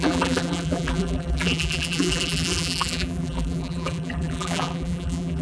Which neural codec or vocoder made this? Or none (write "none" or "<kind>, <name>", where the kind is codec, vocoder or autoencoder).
vocoder, BigVGAN v2